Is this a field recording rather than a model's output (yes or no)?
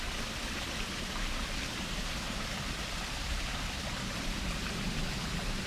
yes